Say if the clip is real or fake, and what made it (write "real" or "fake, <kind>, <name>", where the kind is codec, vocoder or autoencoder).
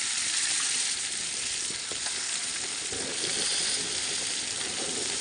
fake, vocoder, BigVGAN v2